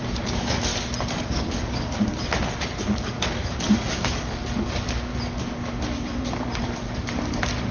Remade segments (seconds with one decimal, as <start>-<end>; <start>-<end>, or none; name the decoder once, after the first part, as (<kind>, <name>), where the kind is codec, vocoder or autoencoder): 0.0-0.7 (codec, DAC); 1.2-2.1; 3.0-5.1; 6.6-7.7